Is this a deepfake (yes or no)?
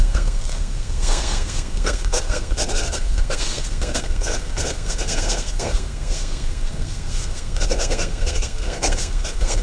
yes